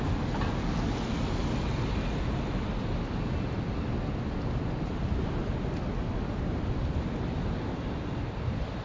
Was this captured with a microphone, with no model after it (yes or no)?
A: yes